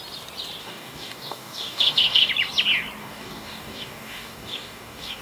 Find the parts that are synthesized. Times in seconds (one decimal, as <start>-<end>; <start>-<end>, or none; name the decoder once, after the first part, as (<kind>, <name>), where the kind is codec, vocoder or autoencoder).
0.6-2.3 (codec, DAC); 3.0-5.2